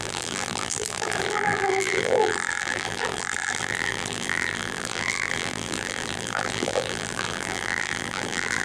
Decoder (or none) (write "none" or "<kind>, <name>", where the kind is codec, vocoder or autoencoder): vocoder, BigVGAN v2